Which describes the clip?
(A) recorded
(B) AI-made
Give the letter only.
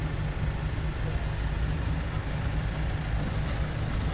A